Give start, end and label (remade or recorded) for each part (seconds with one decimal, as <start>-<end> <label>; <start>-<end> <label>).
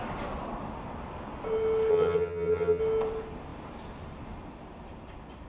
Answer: 0.0-1.9 recorded; 1.9-2.8 remade; 2.8-5.5 recorded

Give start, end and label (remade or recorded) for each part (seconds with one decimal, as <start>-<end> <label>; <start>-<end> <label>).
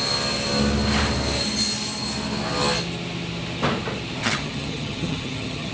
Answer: 0.0-4.2 recorded; 4.2-5.7 remade